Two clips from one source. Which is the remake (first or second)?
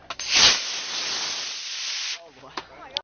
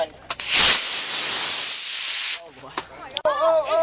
second